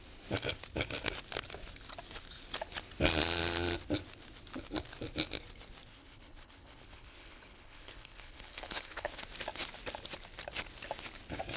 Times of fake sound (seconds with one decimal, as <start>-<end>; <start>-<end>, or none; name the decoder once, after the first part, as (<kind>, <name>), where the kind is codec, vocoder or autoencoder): 5.9-9.2 (codec, HILCodec)